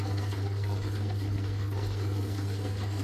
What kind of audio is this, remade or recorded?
remade